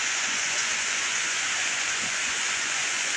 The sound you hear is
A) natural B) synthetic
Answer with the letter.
B